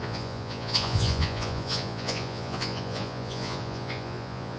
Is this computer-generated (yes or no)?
yes